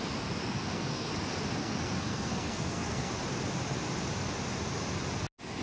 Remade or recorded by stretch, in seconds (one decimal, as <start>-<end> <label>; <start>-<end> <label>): 0.0-0.4 recorded; 0.4-1.1 remade; 1.1-1.6 recorded; 1.6-3.1 remade; 3.1-5.6 recorded